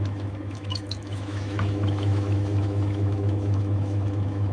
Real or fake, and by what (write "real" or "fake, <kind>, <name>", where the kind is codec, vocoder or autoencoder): fake, autoencoder, DAC-VAE